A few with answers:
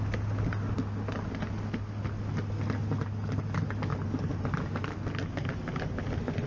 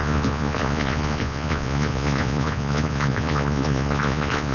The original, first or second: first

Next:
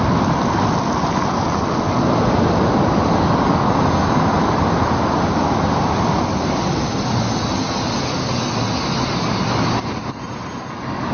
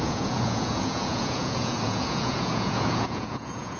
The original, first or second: first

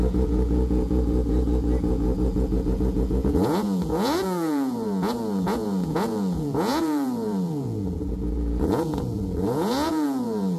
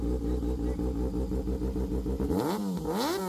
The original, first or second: second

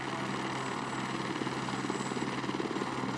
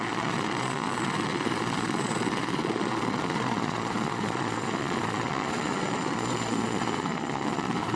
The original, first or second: first